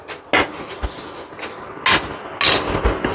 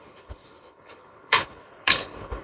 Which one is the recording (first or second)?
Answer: first